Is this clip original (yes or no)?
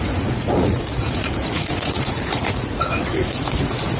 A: no